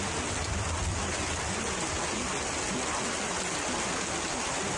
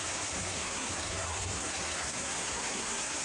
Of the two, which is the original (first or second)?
first